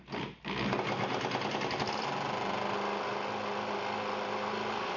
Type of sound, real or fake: real